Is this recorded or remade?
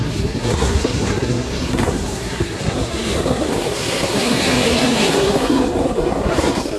remade